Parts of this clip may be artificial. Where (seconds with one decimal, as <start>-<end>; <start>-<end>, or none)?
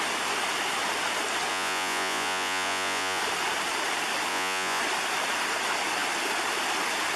1.5-3.2; 4.3-4.8